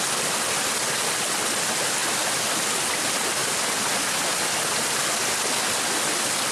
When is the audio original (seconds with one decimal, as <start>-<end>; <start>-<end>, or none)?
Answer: 0.0-6.5